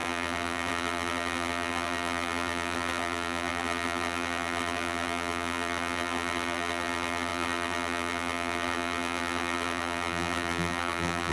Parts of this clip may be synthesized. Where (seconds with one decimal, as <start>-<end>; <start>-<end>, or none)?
0.0-11.3